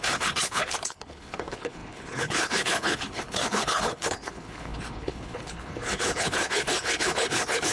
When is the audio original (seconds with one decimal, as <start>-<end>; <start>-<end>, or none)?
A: none